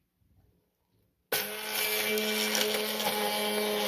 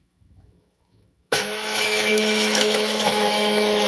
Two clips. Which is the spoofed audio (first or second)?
second